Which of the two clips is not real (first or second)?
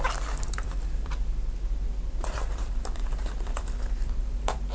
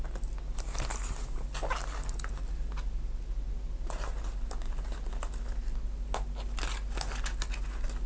first